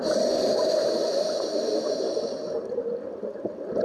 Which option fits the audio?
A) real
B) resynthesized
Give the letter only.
A